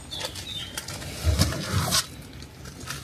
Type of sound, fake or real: real